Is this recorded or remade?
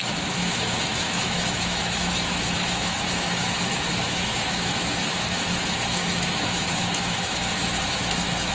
remade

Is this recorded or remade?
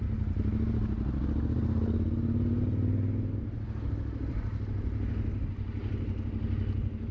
recorded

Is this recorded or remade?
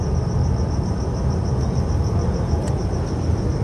recorded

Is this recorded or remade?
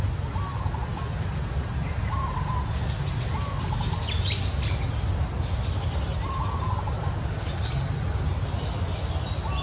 recorded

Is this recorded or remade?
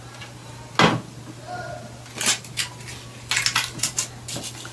recorded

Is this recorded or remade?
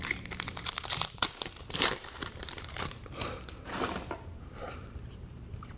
remade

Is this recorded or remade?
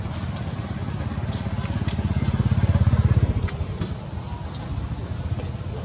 recorded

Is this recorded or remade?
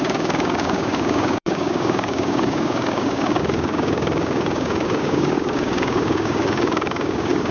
remade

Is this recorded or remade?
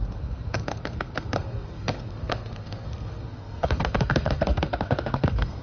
remade